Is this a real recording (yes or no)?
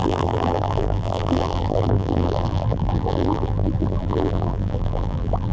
no